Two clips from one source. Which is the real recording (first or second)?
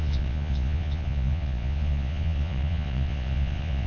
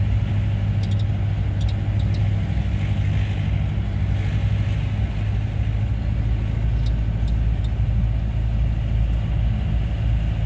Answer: second